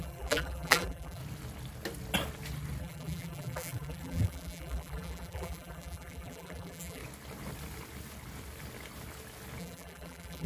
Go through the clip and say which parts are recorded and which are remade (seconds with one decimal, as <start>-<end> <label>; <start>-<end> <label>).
0.0-1.2 remade; 1.2-2.8 recorded; 2.8-7.0 remade; 7.0-9.6 recorded; 9.6-10.5 remade